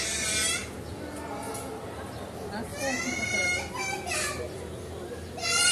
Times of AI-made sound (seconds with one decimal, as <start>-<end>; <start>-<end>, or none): none